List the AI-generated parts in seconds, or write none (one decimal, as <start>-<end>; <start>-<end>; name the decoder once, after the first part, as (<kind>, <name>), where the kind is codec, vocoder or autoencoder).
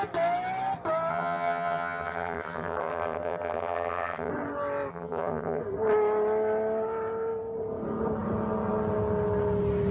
1.1-4.3 (vocoder, HiFi-GAN); 4.9-5.6